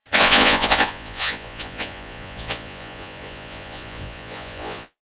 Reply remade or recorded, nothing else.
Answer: remade